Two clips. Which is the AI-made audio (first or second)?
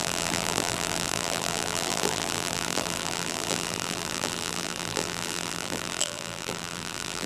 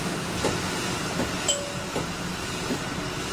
first